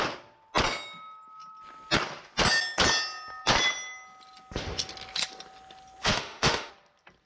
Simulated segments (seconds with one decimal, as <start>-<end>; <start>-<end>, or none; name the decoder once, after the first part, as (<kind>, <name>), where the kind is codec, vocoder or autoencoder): 6.0-6.7 (autoencoder, DAC-VAE)